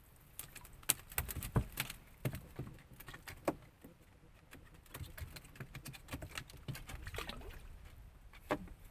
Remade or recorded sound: recorded